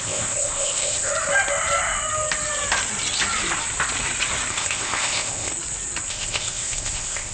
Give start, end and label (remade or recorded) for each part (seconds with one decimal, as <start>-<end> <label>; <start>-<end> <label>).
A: 0.0-1.1 remade; 1.1-4.5 recorded; 4.5-5.5 remade; 5.5-6.1 recorded; 6.1-7.3 remade